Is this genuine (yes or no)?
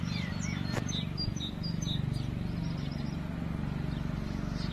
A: yes